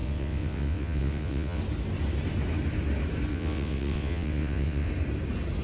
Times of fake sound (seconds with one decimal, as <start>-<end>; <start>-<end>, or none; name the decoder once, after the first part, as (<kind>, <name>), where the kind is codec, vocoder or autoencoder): 0.0-1.6 (vocoder, WaveNeXt); 3.3-4.9